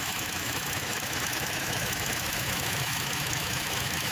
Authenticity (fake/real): fake